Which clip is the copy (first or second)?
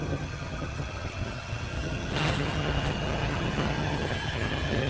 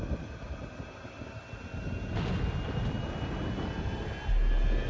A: first